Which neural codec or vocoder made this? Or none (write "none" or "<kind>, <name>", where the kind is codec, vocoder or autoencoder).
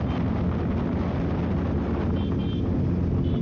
none